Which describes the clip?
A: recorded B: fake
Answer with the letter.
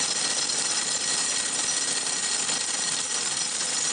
A